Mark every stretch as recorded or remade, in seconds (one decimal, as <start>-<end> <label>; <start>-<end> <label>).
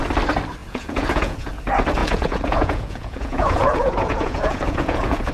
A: 0.0-0.6 recorded; 0.6-1.5 remade; 1.5-2.0 recorded; 2.0-5.3 remade